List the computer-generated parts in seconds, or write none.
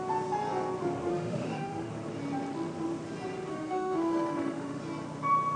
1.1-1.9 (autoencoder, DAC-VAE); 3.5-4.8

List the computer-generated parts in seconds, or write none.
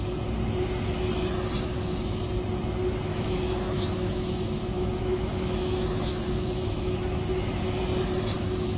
3.1-7.8 (autoencoder, DAC-VAE)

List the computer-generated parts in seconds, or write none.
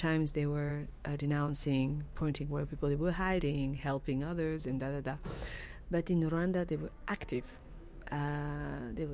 0.0-9.1 (autoencoder, DAC-VAE)